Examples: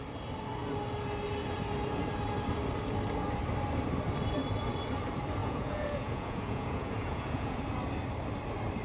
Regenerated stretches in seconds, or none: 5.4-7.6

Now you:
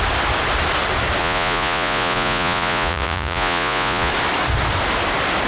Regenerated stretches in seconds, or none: 1.2-4.1

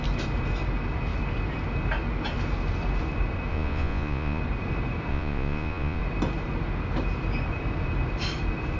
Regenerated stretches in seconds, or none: 3.5-4.4; 5.1-6.0

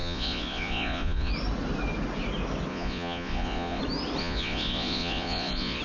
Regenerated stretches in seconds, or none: 0.0-1.3; 2.7-3.8; 4.2-5.8

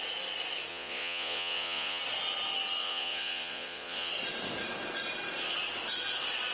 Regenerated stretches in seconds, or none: 0.7-2.0; 2.8-4.1

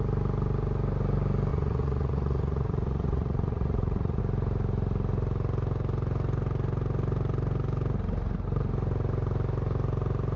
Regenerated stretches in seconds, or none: 1.5-4.2

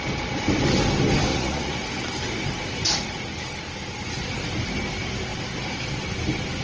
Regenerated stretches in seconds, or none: 1.3-1.9

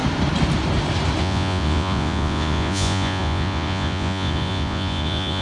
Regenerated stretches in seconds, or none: 1.2-5.4